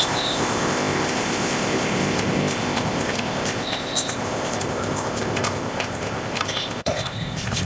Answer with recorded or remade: remade